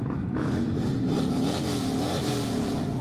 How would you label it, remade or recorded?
remade